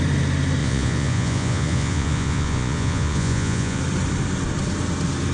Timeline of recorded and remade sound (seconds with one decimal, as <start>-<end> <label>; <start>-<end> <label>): 0.0-0.6 recorded; 0.6-3.8 remade; 3.8-5.3 recorded